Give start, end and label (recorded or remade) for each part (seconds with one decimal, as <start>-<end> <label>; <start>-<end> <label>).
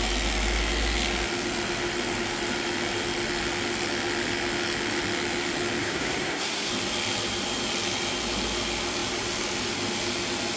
0.0-5.8 recorded; 5.8-6.7 remade; 6.7-10.6 recorded